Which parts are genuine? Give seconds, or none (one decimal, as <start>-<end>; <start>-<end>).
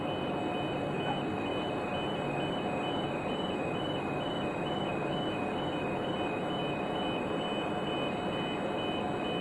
0.0-9.4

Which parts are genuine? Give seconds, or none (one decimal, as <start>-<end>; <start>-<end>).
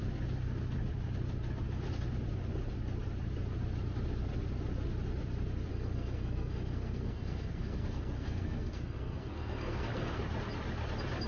0.0-5.7; 10.2-11.3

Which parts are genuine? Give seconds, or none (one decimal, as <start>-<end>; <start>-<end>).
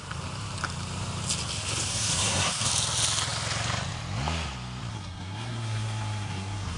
0.0-1.9; 2.7-4.9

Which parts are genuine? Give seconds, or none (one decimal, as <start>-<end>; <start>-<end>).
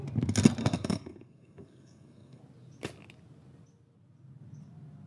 0.0-0.6; 2.4-5.1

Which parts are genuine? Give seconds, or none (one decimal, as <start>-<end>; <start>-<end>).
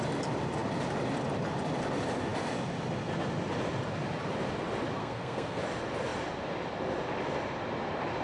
0.0-5.0; 5.6-8.2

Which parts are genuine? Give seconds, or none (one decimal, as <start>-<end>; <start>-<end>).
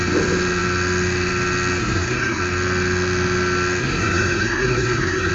0.0-1.8; 2.4-3.8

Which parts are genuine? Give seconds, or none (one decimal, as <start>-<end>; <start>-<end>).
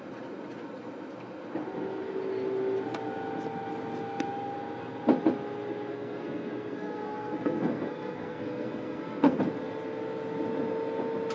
0.0-5.9; 9.4-11.3